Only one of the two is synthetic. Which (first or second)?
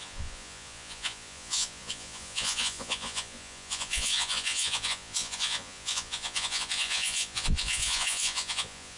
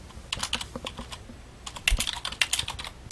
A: first